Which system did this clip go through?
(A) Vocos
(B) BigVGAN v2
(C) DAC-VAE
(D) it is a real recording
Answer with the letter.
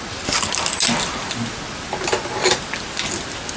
D